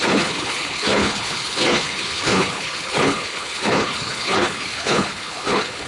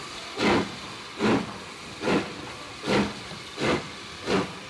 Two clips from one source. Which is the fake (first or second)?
first